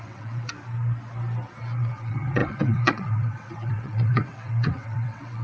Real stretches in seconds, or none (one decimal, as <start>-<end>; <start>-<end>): 0.5-1.8